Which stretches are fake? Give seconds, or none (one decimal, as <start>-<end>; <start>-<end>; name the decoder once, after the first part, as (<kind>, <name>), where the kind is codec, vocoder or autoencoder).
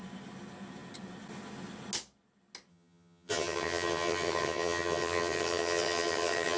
2.7-6.6 (vocoder, HiFi-GAN)